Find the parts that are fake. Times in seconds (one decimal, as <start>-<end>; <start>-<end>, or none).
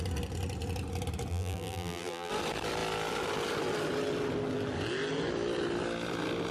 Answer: 1.3-2.3